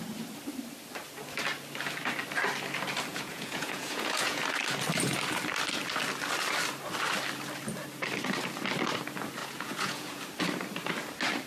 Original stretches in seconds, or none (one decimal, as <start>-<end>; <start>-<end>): 0.0-3.1; 4.4-9.4; 10.2-11.5